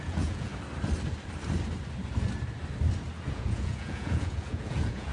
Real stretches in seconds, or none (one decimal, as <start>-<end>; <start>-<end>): 0.5-3.3